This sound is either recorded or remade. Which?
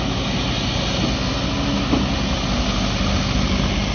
recorded